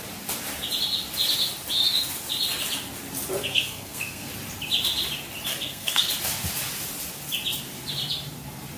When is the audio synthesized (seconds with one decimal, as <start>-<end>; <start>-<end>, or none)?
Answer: 3.4-4.3; 5.5-6.1